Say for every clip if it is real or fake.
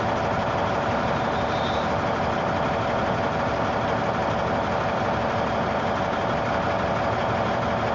real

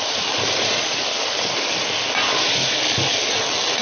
real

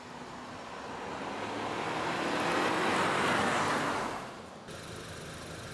real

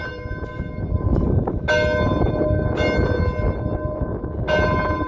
real